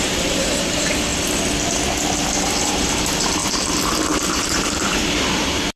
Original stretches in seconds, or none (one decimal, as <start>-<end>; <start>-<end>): 1.1-2.6; 3.4-4.3